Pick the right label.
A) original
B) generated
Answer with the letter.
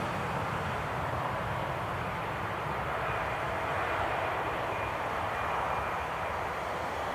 A